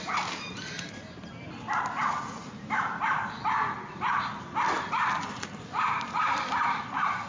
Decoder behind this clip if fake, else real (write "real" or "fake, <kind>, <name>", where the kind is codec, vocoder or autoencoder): real